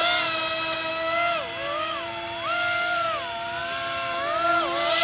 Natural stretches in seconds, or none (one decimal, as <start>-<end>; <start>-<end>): 0.0-5.0